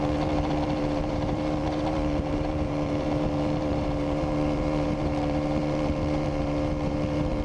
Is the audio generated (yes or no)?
yes